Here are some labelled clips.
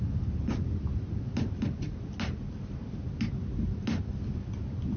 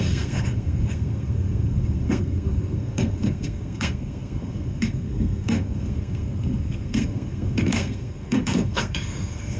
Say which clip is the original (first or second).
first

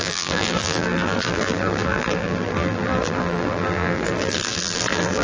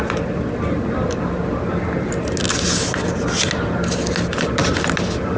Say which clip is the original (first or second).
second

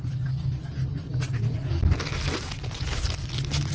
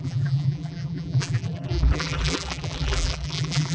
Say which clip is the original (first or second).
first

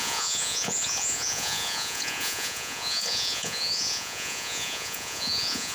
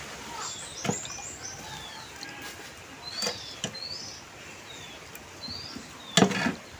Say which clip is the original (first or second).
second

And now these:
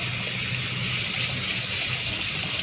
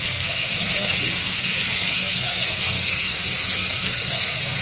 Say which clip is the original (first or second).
first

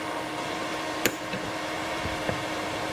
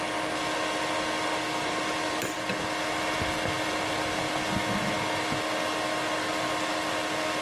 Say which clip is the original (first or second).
second